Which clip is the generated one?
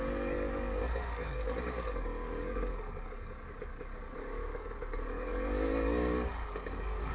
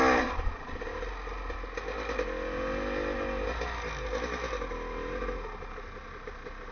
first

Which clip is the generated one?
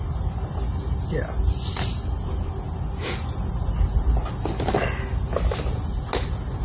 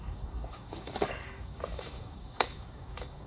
second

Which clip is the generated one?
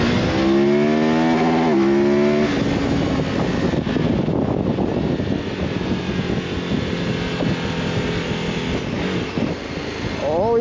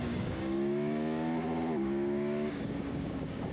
second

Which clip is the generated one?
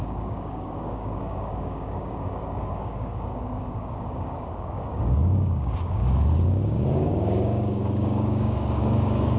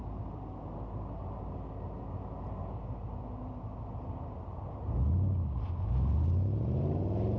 first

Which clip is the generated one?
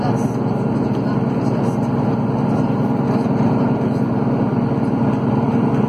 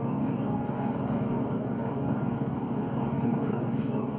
second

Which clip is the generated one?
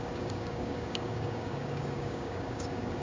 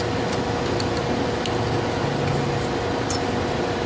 first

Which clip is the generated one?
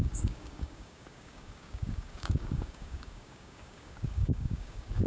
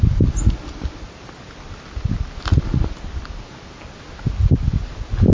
first